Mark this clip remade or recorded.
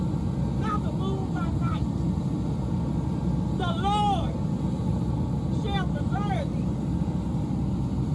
recorded